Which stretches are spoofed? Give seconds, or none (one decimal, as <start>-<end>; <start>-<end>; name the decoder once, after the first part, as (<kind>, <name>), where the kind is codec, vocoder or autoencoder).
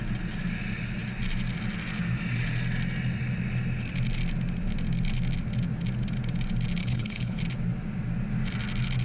6.8-7.4 (codec, HILCodec)